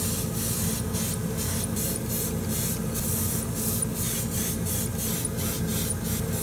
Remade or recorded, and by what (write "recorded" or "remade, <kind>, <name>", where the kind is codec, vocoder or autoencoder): recorded